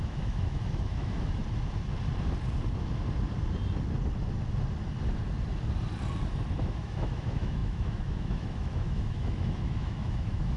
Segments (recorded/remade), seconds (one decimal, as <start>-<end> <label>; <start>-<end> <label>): 0.0-1.4 remade; 1.4-6.6 recorded; 6.6-10.6 remade